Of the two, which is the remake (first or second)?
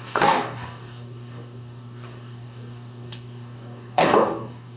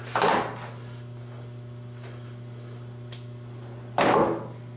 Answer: first